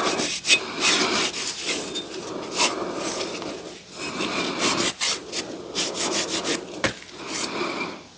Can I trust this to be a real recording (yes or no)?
yes